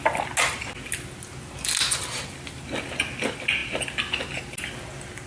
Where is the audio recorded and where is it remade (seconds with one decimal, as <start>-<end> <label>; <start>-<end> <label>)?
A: 0.0-5.3 recorded